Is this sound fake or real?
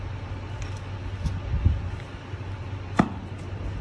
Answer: real